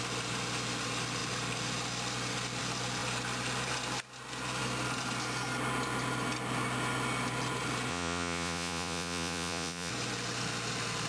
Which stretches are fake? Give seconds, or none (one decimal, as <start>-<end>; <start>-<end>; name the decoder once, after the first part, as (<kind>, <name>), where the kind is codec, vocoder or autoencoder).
7.9-9.9 (vocoder, Vocos)